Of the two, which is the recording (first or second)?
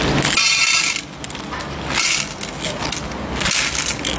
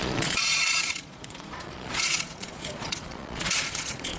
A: first